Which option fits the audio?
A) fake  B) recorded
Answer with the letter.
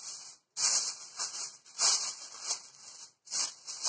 B